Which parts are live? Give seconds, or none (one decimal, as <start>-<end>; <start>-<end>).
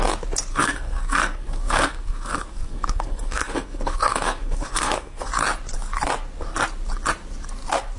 0.0-0.5; 5.3-8.0